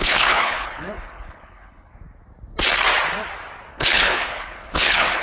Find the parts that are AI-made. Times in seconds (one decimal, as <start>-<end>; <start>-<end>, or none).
0.0-1.9; 3.7-5.2